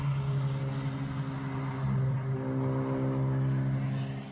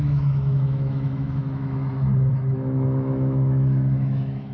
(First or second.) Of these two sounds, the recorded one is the first